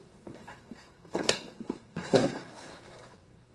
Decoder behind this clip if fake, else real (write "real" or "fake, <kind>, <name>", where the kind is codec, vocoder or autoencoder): fake, codec, SNAC